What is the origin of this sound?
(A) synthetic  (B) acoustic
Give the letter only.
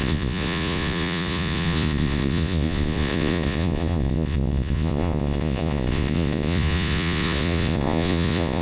A